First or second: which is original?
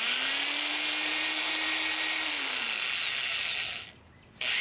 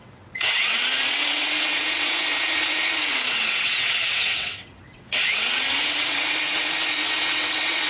first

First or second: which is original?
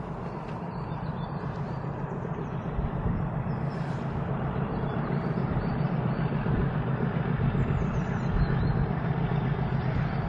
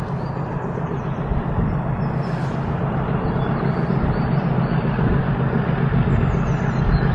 second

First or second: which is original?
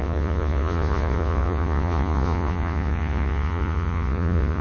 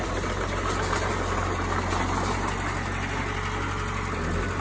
second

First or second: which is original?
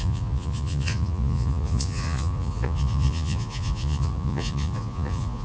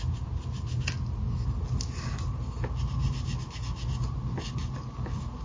second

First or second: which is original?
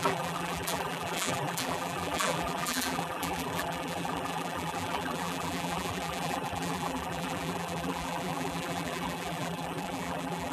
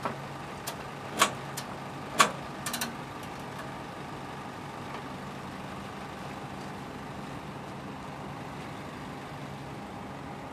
second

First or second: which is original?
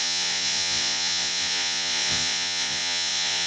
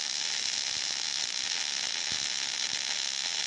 second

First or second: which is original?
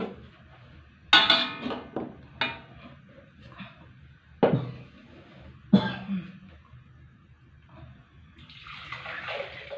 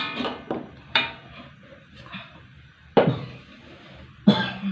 first